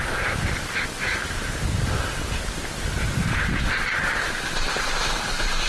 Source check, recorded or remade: remade